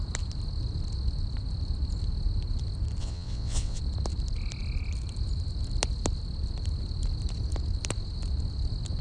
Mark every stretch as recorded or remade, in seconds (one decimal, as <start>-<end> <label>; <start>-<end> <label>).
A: 0.0-3.0 recorded; 3.0-3.8 remade; 3.8-9.0 recorded